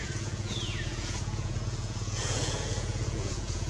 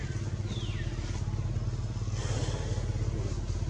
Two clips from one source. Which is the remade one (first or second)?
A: first